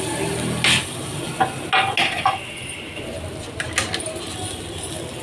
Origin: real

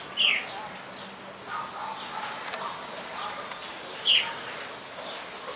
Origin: real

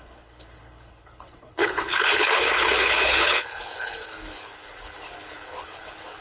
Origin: fake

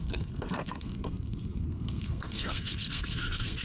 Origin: fake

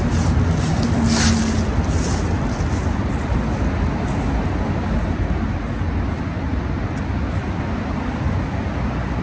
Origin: real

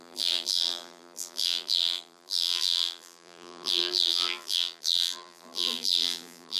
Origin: fake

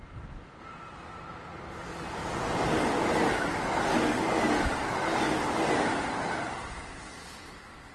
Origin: real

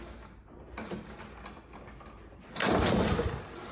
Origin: real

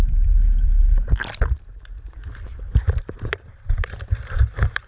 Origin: fake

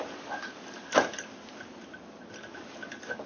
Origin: real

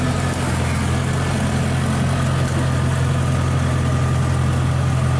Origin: real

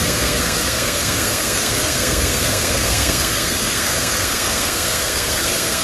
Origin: fake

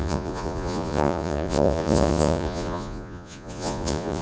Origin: fake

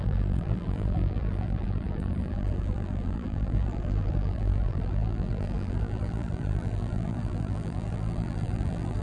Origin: fake